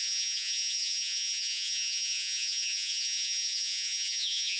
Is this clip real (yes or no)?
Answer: no